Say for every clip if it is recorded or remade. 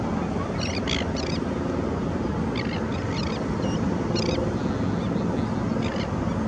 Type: recorded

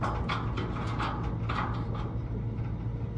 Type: recorded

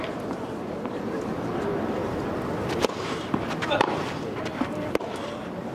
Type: recorded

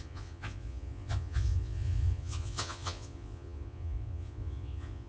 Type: remade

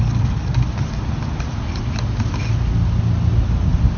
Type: recorded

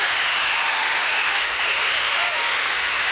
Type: remade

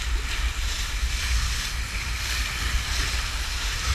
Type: recorded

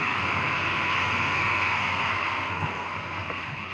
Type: remade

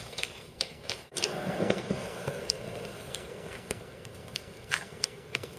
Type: remade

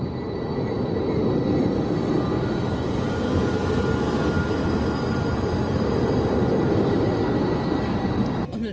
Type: recorded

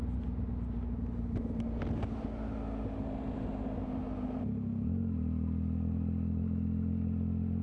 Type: recorded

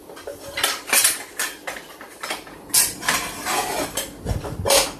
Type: recorded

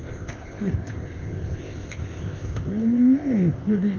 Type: remade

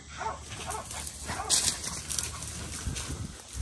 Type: recorded